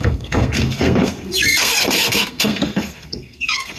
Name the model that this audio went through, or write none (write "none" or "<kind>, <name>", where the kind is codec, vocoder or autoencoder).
codec, SNAC